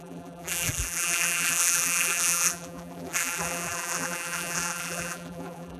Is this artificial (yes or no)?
yes